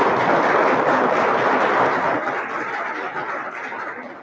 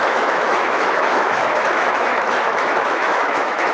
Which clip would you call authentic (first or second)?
first